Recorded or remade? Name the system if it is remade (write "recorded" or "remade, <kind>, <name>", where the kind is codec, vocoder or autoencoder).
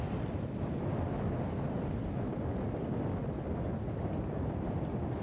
recorded